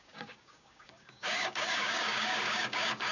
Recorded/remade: remade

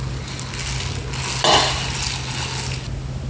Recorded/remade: recorded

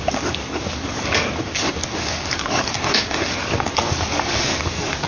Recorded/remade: remade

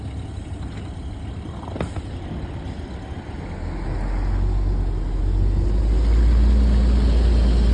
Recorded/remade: recorded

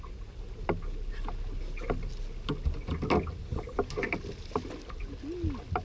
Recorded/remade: recorded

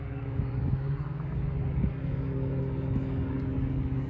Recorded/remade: remade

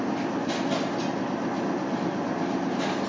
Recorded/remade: recorded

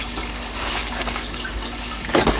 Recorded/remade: remade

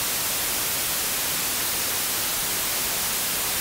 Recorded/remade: recorded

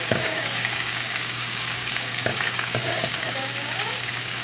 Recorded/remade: remade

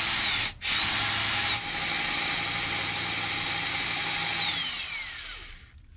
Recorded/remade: recorded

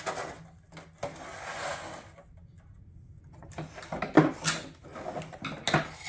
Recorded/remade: recorded